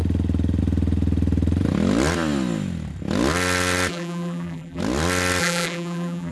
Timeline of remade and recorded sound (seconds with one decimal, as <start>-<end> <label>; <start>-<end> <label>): 0.0-3.9 recorded; 3.9-4.8 remade; 4.8-5.4 recorded; 5.4-6.3 remade